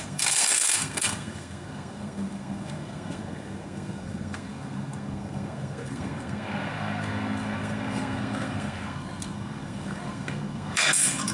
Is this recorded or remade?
remade